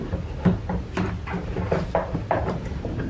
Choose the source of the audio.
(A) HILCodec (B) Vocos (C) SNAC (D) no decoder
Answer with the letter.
D